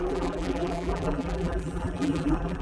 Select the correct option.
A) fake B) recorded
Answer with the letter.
A